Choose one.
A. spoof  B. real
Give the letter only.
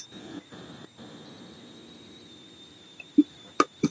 B